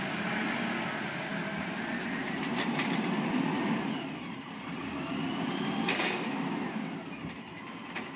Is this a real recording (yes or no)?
yes